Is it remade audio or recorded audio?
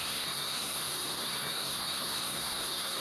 remade